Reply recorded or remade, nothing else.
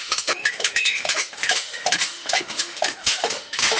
remade